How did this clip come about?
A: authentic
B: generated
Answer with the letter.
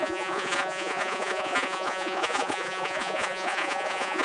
B